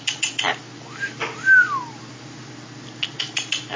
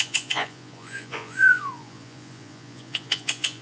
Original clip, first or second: first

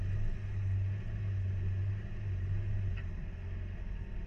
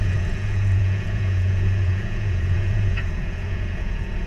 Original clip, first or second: first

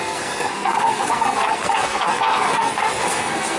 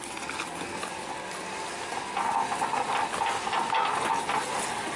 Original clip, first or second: second